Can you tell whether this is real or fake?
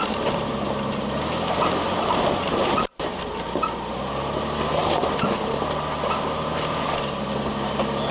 real